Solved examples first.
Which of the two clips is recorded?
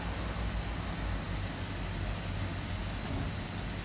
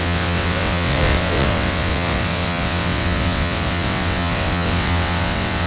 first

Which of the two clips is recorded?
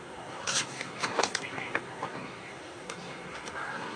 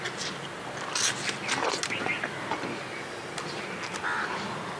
second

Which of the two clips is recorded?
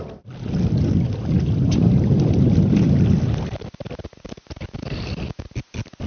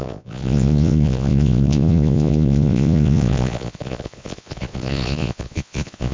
first